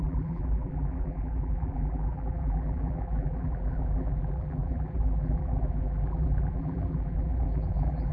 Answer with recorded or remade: remade